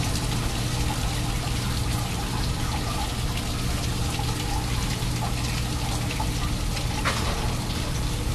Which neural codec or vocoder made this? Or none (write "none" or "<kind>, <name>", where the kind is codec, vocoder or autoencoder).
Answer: none